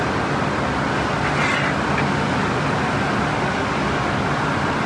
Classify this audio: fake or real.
real